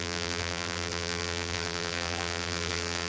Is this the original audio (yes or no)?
no